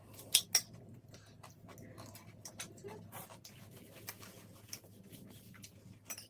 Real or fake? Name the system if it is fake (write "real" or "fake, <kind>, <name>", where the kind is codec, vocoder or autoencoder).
real